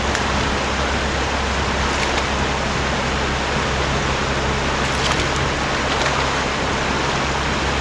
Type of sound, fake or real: real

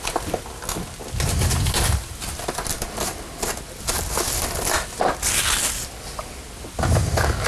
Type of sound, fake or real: real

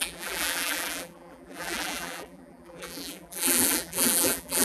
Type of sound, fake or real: fake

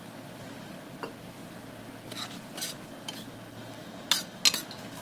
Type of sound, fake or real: real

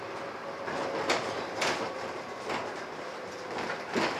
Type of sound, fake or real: fake